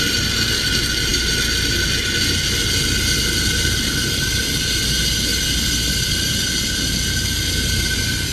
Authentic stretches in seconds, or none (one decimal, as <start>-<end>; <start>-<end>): 0.0-5.3; 6.3-8.3